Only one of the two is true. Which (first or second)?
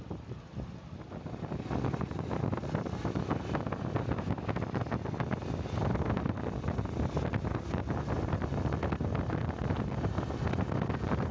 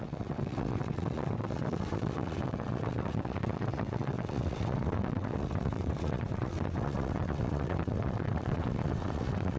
first